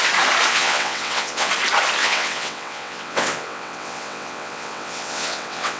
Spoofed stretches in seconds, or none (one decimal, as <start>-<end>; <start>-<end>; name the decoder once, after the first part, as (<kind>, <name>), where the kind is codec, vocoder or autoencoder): 0.5-1.5 (vocoder, WaveNeXt); 2.0-5.8